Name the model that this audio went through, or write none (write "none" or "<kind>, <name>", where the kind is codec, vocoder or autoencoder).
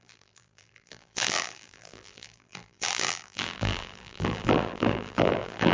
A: vocoder, BigVGAN v2